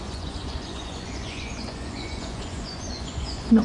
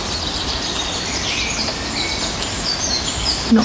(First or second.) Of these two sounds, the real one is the second